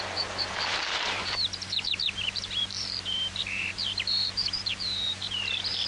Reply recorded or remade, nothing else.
remade